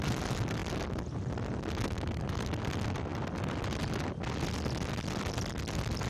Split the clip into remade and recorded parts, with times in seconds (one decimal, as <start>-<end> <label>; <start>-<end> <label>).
0.0-6.1 recorded